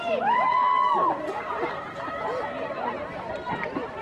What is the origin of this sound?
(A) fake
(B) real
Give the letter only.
A